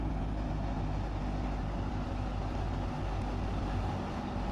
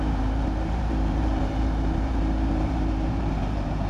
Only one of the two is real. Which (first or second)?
first